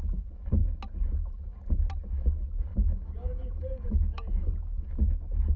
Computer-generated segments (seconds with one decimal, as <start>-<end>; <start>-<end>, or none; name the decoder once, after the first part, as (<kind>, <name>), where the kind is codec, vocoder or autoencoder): 2.7-4.5 (codec, DAC)